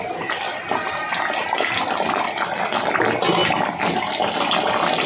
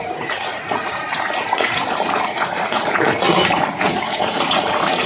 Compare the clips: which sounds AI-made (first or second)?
second